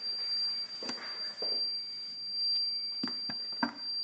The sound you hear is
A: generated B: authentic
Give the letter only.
B